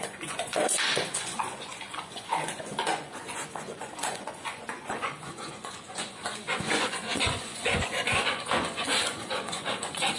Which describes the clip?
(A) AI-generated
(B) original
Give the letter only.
A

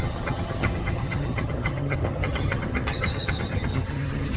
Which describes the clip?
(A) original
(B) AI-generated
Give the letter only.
B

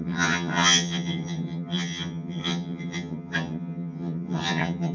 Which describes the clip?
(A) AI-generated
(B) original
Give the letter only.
A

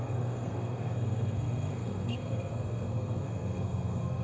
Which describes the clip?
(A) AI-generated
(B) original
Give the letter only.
A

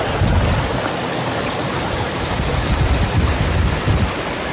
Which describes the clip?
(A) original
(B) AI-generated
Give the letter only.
A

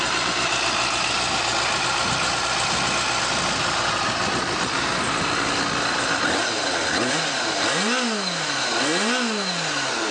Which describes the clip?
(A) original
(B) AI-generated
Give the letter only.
A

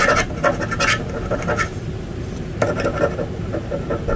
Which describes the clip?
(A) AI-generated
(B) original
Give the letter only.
B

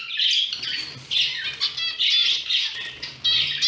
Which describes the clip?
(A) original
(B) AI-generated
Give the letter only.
A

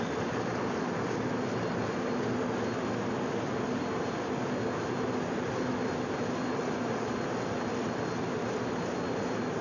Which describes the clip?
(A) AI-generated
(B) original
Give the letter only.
B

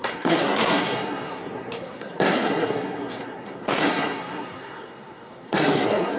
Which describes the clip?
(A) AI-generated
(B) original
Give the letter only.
A